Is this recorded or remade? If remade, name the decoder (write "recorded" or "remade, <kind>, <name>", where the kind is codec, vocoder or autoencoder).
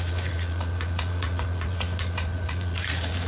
remade, vocoder, Vocos